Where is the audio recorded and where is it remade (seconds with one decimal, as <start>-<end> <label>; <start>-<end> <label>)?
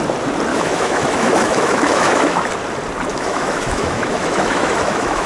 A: 0.0-0.5 recorded; 0.5-2.5 remade; 2.5-3.1 recorded; 3.1-5.3 remade